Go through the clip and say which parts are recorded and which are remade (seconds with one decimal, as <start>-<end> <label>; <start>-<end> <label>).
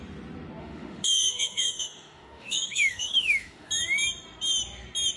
0.0-0.6 recorded; 0.6-3.7 remade; 3.7-5.2 recorded